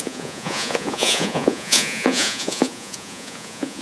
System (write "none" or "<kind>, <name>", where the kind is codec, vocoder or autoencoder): vocoder, Vocos